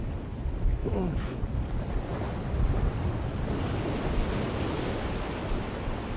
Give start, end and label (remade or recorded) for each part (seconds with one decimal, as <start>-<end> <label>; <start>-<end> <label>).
0.0-0.8 recorded; 0.8-1.4 remade; 1.4-6.2 recorded